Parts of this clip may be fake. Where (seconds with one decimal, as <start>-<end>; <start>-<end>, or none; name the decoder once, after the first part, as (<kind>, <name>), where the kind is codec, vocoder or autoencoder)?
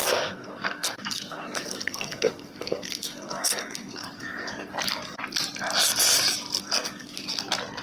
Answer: 0.0-4.7 (codec, SNAC); 6.6-7.3